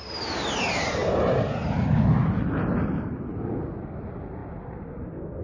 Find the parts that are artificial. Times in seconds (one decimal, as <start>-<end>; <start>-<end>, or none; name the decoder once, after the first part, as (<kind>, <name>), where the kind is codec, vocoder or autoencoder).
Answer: none